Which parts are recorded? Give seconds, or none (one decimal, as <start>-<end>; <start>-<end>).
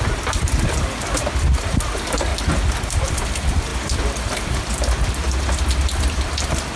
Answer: 2.3-2.8